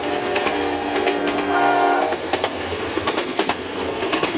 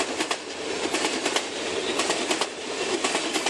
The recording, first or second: second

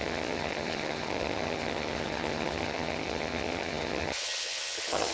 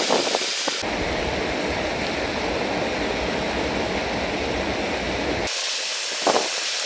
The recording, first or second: second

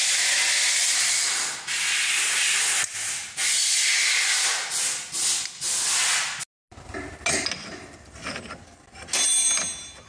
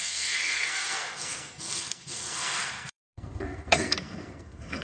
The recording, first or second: first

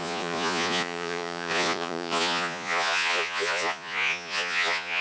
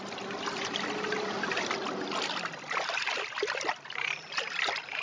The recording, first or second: second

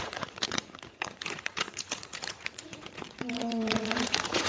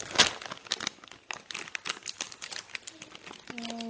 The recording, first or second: second